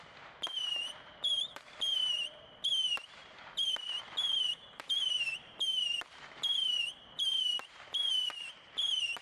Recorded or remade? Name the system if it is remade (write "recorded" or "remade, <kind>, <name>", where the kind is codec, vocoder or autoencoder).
remade, vocoder, BigVGAN v2